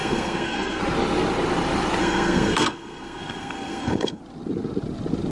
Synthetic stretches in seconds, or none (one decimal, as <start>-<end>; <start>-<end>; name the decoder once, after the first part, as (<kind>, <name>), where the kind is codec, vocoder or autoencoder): 0.0-0.8 (codec, SNAC); 2.0-4.2